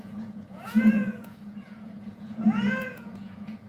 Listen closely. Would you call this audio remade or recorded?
remade